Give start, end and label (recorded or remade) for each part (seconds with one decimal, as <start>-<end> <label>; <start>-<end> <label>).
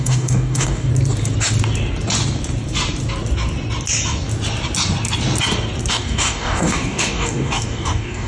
0.0-0.9 remade; 0.9-5.9 recorded; 5.9-8.3 remade